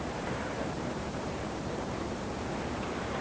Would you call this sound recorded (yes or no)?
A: no